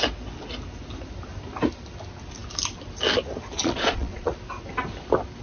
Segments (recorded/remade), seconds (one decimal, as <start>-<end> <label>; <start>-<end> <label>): 0.0-3.6 recorded; 3.6-4.3 remade; 4.3-5.4 recorded